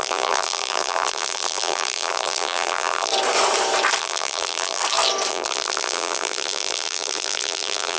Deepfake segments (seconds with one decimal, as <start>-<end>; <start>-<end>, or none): 0.0-3.1; 4.0-4.8; 5.3-8.0